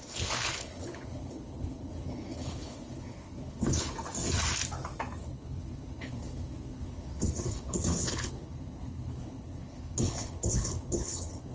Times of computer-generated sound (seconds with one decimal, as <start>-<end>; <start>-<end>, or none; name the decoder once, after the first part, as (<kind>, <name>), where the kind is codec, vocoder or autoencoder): 0.0-3.9 (codec, HILCodec); 5.2-11.5

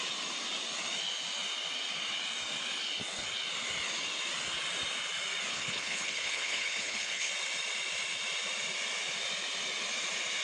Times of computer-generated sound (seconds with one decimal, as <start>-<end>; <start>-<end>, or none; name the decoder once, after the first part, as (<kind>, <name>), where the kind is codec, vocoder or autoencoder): 5.5-7.3 (codec, HILCodec)